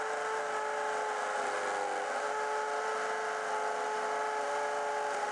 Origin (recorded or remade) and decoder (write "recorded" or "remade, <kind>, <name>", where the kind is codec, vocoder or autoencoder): recorded